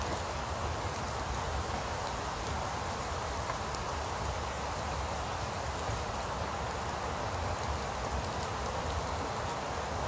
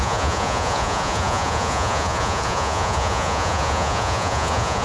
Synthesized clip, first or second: second